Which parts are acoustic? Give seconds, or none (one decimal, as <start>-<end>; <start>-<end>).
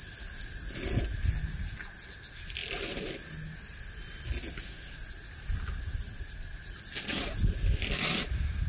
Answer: 0.0-8.7